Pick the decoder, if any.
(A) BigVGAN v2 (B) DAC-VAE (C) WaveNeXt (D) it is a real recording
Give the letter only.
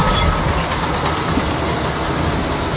D